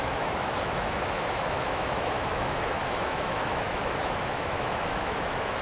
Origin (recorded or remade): remade